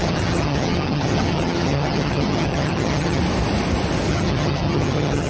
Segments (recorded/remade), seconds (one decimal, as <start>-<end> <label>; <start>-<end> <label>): 0.0-3.2 remade; 3.2-4.1 recorded; 4.1-5.3 remade